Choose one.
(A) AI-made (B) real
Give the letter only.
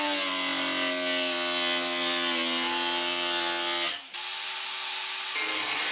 B